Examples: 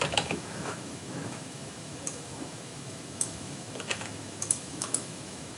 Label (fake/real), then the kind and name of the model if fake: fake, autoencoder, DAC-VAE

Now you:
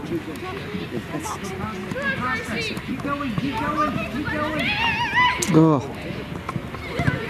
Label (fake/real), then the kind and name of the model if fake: real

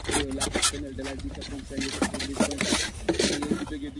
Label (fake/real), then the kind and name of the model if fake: real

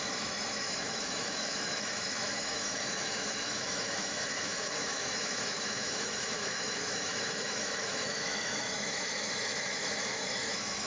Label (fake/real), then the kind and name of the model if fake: fake, autoencoder, DAC-VAE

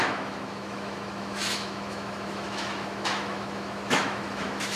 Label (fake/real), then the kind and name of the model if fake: fake, autoencoder, DAC-VAE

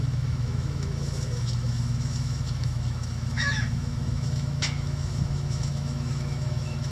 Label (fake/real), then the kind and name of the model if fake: fake, autoencoder, DAC-VAE